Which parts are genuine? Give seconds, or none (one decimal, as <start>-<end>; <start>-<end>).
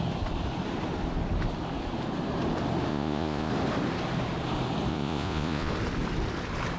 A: 0.0-2.9; 3.5-4.9; 5.7-6.8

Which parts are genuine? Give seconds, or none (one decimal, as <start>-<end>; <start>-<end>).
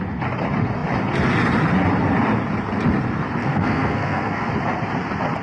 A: 0.0-3.4; 4.5-5.4